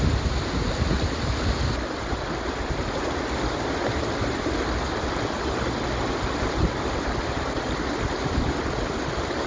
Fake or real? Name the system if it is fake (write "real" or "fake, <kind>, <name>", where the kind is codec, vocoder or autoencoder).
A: real